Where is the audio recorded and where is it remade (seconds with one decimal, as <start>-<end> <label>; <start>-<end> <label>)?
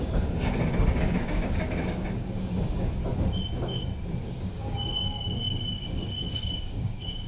0.0-3.1 remade; 3.1-4.2 recorded; 4.2-7.3 remade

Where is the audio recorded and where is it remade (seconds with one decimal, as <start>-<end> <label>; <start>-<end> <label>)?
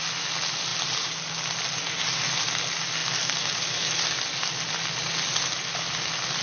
0.0-6.4 recorded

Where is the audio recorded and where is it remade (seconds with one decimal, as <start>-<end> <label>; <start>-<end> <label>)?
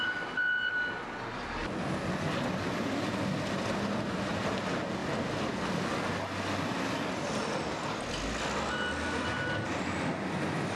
0.0-10.8 recorded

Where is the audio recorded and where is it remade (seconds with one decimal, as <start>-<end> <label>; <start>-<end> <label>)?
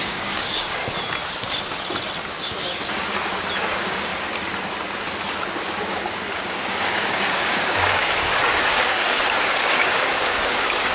0.0-0.8 remade; 0.8-3.6 recorded; 3.6-4.1 remade; 4.1-5.9 recorded; 5.9-10.9 remade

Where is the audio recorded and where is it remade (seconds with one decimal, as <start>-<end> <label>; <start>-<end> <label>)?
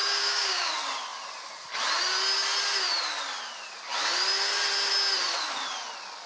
0.0-0.7 remade; 0.7-6.3 recorded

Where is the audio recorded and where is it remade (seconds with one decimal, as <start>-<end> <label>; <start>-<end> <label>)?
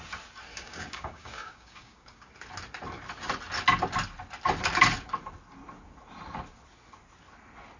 0.0-0.5 recorded; 0.5-2.3 remade; 2.3-7.8 recorded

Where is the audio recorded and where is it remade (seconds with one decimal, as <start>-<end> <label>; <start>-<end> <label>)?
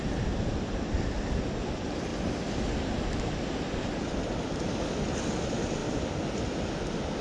0.0-7.2 recorded